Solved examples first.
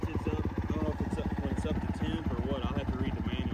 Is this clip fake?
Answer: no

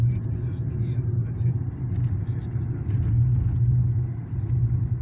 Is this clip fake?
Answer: no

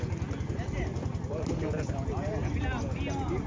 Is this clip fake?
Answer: no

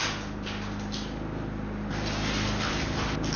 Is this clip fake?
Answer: no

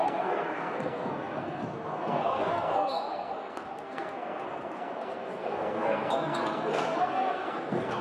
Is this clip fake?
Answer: yes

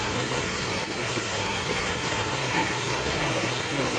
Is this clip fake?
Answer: yes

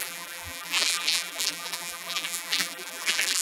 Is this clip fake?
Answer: yes